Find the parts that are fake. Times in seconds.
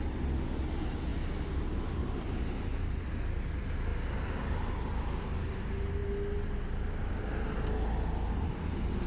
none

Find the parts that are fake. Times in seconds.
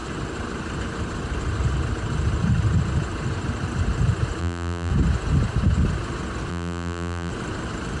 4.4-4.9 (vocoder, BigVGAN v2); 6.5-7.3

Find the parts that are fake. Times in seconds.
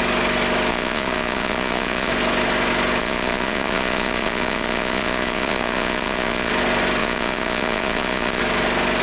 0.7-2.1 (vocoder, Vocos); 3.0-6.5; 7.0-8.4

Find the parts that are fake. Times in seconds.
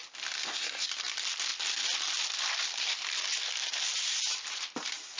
0.4-0.9 (codec, SNAC)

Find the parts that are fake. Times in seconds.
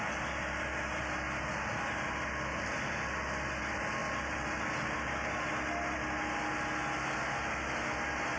none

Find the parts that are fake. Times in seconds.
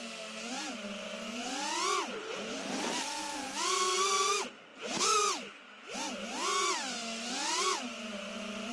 none